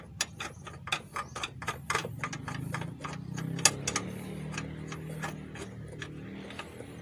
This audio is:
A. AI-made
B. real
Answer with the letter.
B